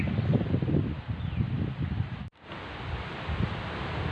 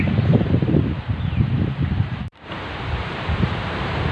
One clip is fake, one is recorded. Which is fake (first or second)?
second